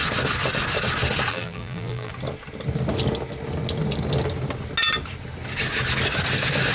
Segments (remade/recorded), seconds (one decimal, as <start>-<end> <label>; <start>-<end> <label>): 0.0-1.3 recorded; 1.3-2.1 remade; 2.1-6.7 recorded